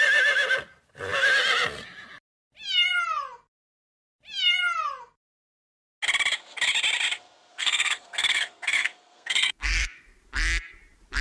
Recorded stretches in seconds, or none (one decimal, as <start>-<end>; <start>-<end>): 0.0-7.5; 10.2-11.2